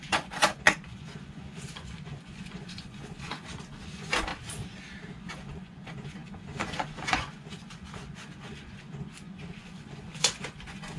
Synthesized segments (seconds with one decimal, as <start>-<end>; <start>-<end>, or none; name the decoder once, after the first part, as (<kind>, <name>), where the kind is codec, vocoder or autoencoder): 0.0-4.3 (vocoder, Vocos); 5.2-11.0